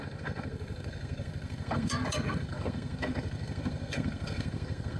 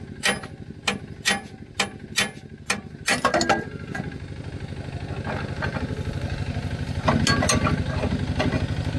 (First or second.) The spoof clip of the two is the first